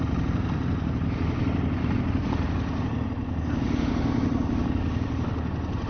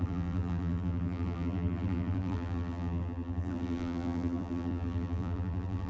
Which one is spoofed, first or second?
second